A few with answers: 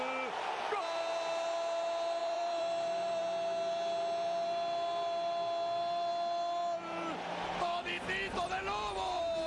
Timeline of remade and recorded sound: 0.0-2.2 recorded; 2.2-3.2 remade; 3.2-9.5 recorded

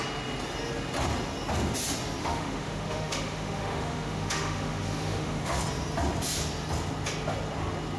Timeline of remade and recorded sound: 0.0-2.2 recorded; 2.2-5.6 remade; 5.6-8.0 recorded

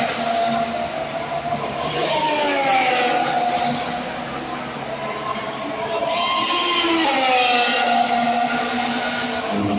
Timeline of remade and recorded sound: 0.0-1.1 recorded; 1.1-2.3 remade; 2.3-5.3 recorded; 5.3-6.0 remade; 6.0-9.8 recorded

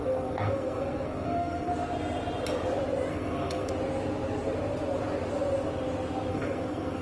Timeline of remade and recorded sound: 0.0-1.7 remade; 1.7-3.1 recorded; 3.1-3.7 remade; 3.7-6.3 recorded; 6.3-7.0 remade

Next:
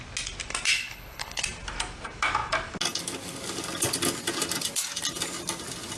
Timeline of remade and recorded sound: 0.0-0.7 recorded; 0.7-1.4 remade; 1.4-6.0 recorded

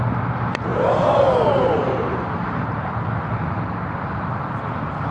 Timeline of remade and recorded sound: 0.0-0.7 recorded; 0.7-2.9 remade; 2.9-5.1 recorded

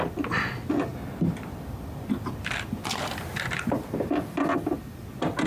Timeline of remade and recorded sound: 0.0-5.5 recorded

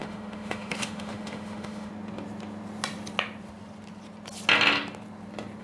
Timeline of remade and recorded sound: 0.0-1.9 remade; 1.9-5.6 recorded